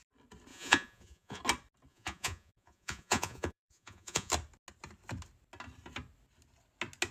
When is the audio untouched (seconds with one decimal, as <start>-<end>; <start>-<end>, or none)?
0.0-0.5; 1.4-1.9; 4.3-7.1